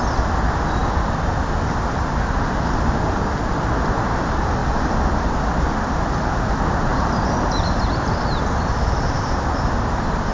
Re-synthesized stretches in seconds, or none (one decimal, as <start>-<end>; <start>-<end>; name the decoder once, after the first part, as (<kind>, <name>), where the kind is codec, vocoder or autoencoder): 4.6-5.3 (vocoder, BigVGAN v2); 6.9-8.2